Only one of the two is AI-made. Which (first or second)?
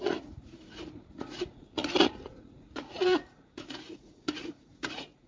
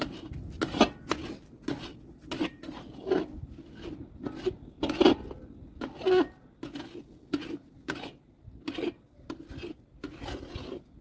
first